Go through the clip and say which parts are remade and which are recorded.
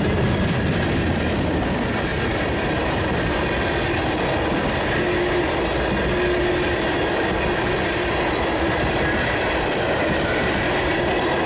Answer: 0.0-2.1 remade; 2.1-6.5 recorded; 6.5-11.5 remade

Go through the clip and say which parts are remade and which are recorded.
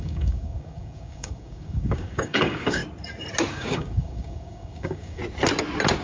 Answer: 0.0-2.8 remade; 2.8-3.5 recorded; 3.5-5.2 remade; 5.2-6.0 recorded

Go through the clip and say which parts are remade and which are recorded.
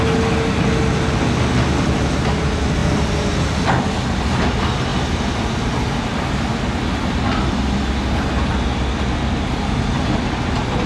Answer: 0.0-10.9 recorded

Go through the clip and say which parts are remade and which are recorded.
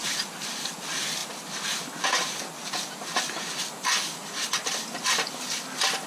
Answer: 0.0-6.1 recorded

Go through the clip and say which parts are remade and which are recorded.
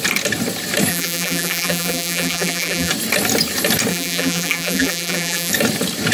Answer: 0.0-0.9 recorded; 0.9-2.9 remade; 2.9-3.9 recorded; 3.9-5.5 remade; 5.5-6.1 recorded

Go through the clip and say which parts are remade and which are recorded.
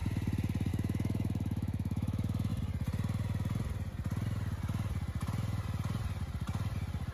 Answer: 0.0-0.7 recorded; 0.7-2.5 remade; 2.5-7.1 recorded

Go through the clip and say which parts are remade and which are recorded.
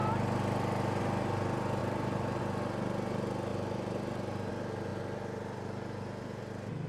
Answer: 0.0-1.8 recorded; 1.8-2.4 remade; 2.4-3.5 recorded; 3.5-4.5 remade; 4.5-6.9 recorded